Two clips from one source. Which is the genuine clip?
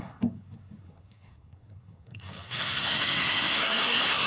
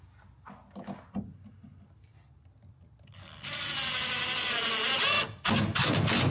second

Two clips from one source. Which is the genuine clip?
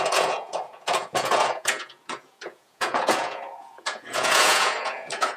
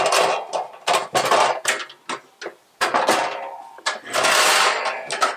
second